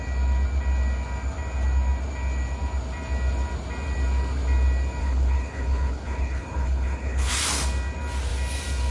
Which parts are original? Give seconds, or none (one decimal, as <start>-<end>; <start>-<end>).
0.0-5.0; 7.3-8.9